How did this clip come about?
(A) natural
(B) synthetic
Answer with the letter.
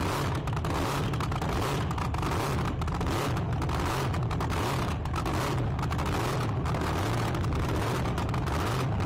A